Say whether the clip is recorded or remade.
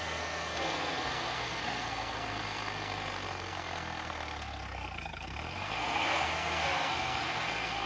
remade